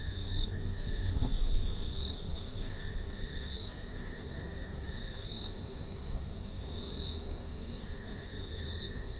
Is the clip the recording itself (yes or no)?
no